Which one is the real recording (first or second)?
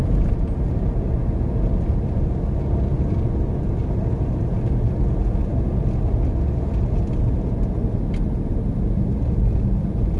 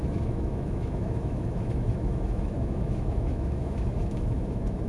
first